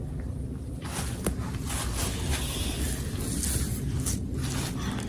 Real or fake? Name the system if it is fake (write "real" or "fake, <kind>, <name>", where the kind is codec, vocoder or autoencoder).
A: real